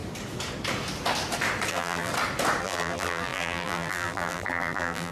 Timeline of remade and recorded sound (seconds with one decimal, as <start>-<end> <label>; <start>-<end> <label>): 0.0-1.7 recorded; 1.7-2.1 remade; 2.1-2.6 recorded; 2.6-5.1 remade